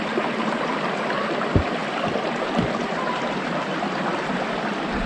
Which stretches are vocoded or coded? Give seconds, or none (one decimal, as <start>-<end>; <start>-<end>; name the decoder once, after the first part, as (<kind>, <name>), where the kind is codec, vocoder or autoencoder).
0.0-1.8 (vocoder, BigVGAN v2); 2.5-5.1